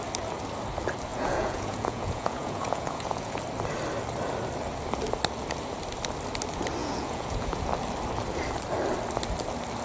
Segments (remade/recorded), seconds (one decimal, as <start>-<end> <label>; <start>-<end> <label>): 0.0-1.1 recorded; 1.1-3.3 remade; 3.3-6.8 recorded; 6.8-7.7 remade; 7.7-9.8 recorded